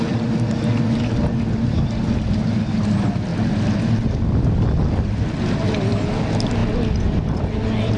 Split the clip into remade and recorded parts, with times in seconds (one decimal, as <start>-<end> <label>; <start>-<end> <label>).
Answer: 0.0-8.0 recorded